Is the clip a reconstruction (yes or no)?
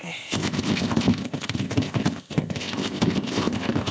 yes